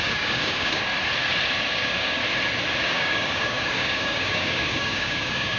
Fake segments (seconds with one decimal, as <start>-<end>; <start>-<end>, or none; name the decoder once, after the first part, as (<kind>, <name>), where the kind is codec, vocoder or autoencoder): 0.0-0.9 (codec, DAC); 1.7-2.2; 2.8-5.6